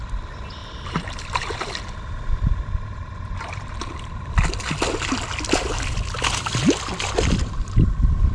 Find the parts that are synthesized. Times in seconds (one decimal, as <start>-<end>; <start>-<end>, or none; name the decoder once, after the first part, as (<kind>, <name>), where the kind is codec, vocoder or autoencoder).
0.6-4.3 (vocoder, BigVGAN v2)

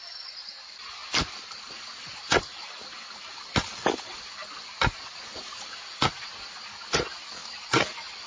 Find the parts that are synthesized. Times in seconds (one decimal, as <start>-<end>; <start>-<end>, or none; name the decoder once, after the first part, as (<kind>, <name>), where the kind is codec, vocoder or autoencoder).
7.4-8.3 (vocoder, BigVGAN v2)

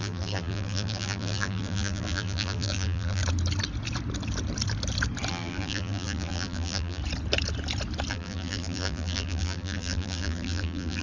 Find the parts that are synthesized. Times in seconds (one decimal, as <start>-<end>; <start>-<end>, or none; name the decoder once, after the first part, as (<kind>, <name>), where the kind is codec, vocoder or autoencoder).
0.0-3.2 (vocoder, BigVGAN v2); 5.3-7.0; 8.1-11.0

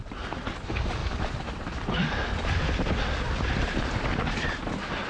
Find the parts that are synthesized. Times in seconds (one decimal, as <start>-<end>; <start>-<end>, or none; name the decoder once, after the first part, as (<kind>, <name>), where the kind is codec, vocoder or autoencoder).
1.0-4.1 (vocoder, BigVGAN v2)

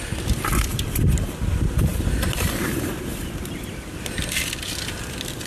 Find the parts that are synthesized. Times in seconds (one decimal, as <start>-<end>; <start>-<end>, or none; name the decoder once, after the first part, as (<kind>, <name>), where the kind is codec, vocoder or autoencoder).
0.7-1.4 (vocoder, BigVGAN v2); 1.9-2.9